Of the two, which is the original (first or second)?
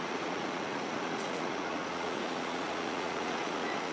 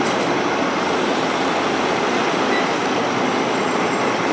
second